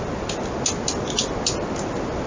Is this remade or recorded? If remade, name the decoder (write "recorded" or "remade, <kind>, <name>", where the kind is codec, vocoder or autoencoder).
recorded